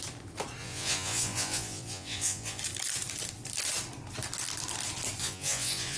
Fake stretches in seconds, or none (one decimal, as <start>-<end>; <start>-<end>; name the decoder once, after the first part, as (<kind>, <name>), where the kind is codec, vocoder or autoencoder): 0.6-2.6 (vocoder, Vocos); 5.2-6.0